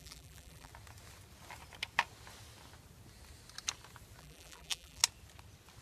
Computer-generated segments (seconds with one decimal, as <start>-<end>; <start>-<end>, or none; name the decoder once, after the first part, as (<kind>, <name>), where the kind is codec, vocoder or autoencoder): 0.0-0.7 (vocoder, BigVGAN v2); 4.2-5.0